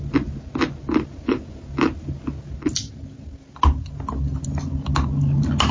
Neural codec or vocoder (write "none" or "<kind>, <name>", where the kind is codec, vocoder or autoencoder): none